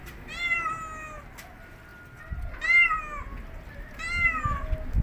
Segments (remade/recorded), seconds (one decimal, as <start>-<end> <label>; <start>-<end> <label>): 0.0-5.0 recorded